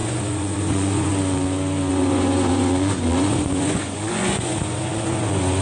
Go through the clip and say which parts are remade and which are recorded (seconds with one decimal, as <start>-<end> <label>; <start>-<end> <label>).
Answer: 0.0-1.1 remade; 1.1-1.9 recorded; 1.9-5.6 remade